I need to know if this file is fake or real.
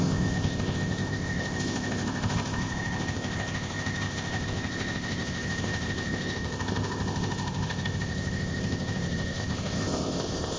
fake